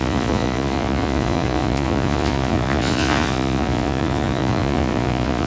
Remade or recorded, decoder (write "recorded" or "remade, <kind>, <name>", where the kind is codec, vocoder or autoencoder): remade, vocoder, Vocos